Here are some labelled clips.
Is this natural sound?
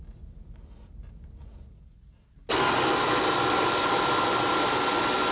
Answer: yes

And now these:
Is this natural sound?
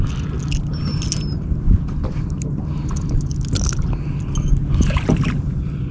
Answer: yes